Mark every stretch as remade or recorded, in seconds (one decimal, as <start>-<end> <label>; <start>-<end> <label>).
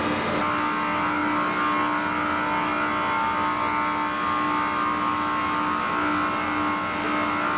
0.0-7.6 recorded